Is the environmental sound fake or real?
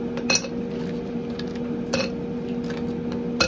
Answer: real